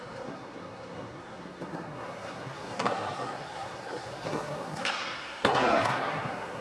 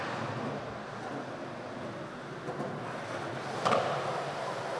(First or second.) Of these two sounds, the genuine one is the second